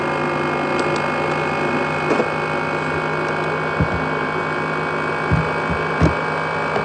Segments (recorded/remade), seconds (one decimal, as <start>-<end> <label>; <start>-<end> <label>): 0.0-6.8 recorded